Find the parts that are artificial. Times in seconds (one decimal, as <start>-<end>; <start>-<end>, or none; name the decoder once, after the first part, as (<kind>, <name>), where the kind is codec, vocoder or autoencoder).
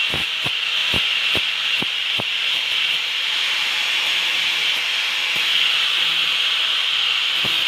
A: 0.8-4.7 (vocoder, BigVGAN v2); 6.2-6.9